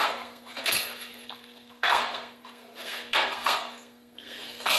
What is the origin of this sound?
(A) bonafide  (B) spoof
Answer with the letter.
B